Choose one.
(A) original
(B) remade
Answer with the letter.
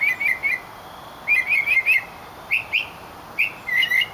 A